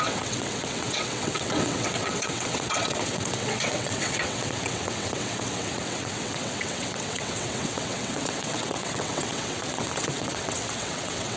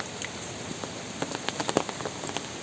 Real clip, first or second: second